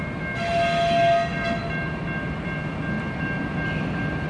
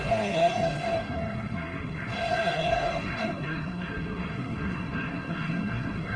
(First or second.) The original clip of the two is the first